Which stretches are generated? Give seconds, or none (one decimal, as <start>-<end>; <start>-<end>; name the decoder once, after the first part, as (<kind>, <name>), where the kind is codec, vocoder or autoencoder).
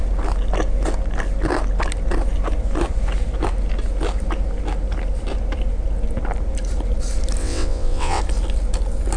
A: 7.4-8.2 (vocoder, WaveNeXt)